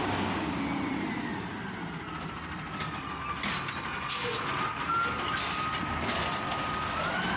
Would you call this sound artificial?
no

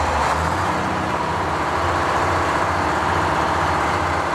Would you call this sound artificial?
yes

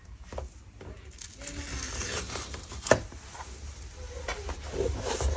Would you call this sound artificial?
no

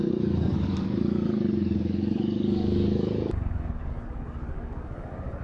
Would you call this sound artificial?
yes